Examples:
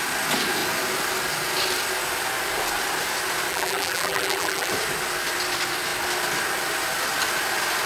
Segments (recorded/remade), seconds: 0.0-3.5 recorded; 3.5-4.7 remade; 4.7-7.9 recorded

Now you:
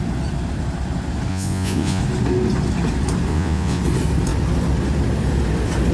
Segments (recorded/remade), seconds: 0.0-1.3 recorded; 1.3-2.0 remade; 2.0-3.3 recorded; 3.3-3.8 remade; 3.8-5.9 recorded

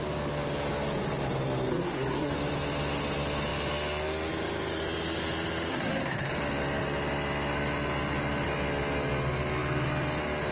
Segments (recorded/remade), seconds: 0.0-1.7 recorded; 1.7-2.3 remade; 2.3-5.7 recorded; 5.7-6.3 remade; 6.3-10.5 recorded

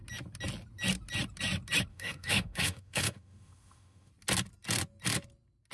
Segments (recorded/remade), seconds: 0.0-1.9 recorded; 1.9-4.1 remade; 4.1-5.7 recorded